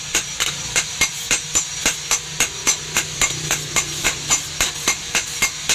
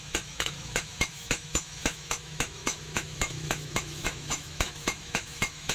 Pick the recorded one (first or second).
first